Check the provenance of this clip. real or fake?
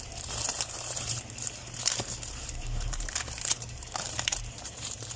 fake